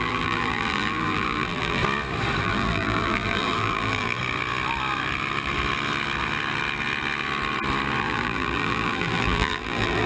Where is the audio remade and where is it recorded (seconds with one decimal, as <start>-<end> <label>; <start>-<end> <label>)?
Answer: 0.0-1.8 remade; 1.8-2.4 recorded; 2.4-4.2 remade; 4.2-8.0 recorded; 8.0-10.1 remade